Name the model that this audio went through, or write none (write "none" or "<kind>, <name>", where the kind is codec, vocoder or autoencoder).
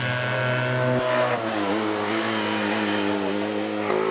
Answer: none